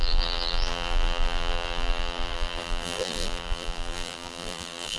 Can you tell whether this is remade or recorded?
remade